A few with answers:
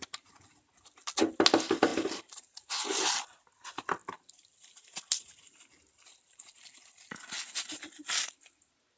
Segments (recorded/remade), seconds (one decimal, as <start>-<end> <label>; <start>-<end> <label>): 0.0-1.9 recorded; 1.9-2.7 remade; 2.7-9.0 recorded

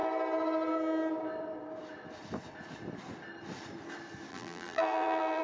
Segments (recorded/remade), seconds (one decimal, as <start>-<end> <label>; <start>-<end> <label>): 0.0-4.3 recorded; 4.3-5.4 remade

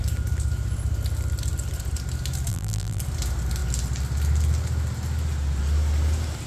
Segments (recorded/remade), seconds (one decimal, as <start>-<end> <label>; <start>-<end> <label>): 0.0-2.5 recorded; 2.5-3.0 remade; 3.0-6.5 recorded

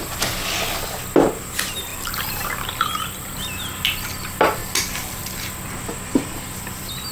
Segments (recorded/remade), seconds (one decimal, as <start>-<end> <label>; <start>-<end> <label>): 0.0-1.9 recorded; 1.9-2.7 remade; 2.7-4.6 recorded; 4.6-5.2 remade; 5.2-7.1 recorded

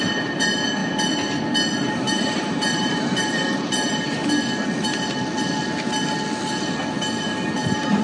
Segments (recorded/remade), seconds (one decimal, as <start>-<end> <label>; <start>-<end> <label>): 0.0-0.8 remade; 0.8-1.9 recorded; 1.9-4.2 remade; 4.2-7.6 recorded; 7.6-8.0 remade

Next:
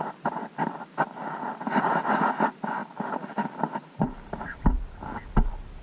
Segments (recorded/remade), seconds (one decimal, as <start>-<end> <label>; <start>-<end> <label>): 0.0-2.8 recorded; 2.8-4.9 remade; 4.9-5.8 recorded

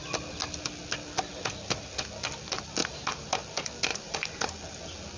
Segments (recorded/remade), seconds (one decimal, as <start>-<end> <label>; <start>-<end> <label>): 0.0-2.8 recorded; 2.8-3.4 remade; 3.4-3.9 recorded; 3.9-4.5 remade; 4.5-5.2 recorded